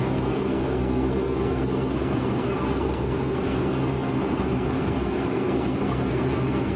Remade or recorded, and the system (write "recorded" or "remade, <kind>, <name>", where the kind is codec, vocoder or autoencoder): remade, codec, SNAC